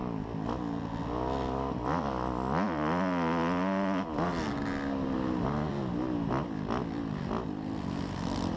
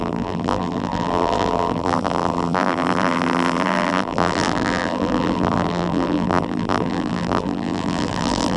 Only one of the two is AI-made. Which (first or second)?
second